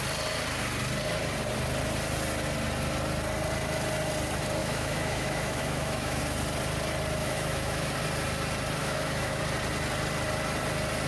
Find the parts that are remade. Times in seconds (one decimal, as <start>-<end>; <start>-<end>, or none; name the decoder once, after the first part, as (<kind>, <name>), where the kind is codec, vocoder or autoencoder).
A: 4.6-6.2 (autoencoder, DAC-VAE); 7.2-7.9; 8.8-9.4